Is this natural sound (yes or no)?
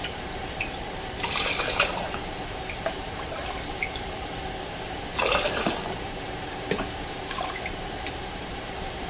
no